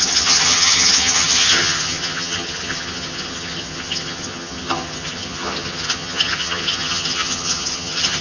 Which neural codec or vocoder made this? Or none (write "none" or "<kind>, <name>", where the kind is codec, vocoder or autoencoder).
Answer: vocoder, HiFi-GAN